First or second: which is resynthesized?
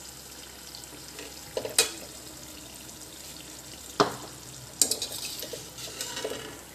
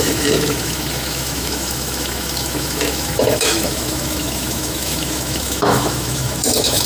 second